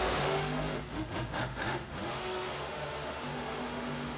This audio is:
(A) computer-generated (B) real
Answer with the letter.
A